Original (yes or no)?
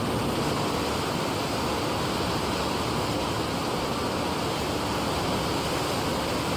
yes